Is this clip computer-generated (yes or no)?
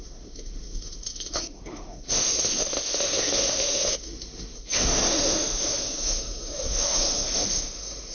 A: yes